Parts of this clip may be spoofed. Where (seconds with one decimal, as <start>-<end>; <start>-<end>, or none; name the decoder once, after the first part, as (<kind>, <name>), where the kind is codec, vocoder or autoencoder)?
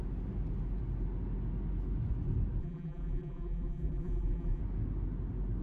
2.6-4.6 (vocoder, BigVGAN v2)